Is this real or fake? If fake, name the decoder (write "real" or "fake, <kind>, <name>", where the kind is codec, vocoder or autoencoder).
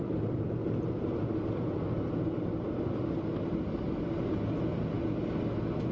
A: real